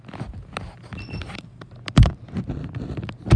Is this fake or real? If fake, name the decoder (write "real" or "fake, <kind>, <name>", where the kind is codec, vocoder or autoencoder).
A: real